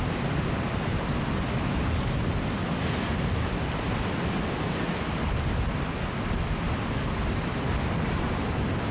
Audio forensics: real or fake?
real